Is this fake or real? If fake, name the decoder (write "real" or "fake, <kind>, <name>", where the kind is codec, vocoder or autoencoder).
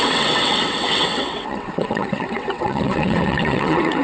fake, vocoder, WaveNeXt